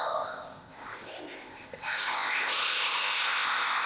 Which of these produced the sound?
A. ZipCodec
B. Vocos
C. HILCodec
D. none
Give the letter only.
A